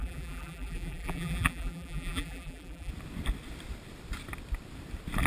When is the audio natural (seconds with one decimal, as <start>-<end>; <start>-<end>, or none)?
2.9-5.3